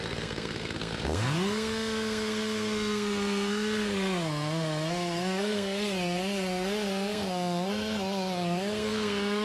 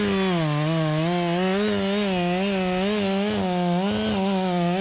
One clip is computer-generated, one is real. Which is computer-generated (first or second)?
first